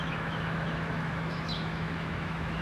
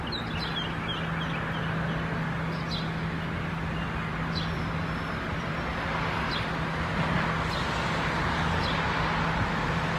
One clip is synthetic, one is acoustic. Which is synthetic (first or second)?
first